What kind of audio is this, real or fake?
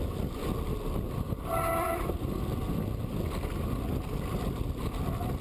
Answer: real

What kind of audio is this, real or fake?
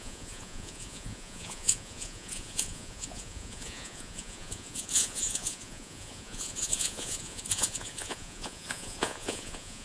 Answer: fake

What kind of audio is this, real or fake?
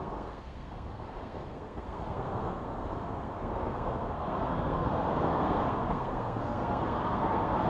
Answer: fake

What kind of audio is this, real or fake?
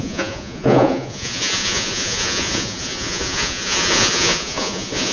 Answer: fake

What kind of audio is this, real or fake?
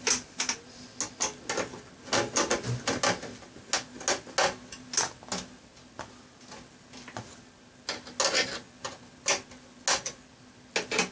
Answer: real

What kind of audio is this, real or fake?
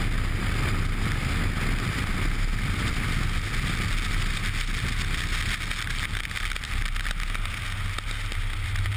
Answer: real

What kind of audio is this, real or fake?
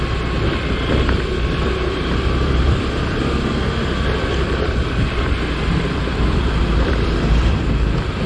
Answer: fake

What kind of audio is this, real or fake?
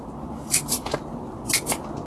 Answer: real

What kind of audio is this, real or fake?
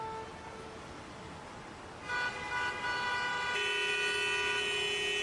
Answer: real